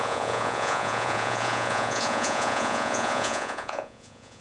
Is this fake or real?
fake